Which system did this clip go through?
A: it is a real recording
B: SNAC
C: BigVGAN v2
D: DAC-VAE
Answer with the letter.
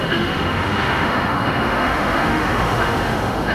D